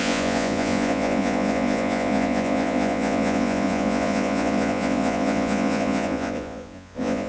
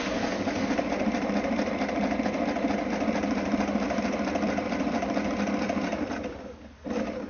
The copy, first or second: first